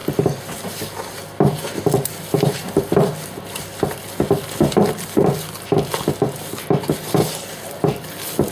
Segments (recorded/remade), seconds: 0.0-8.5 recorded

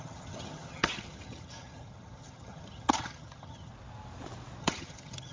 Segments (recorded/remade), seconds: 0.0-3.7 remade; 3.7-4.6 recorded; 4.6-5.3 remade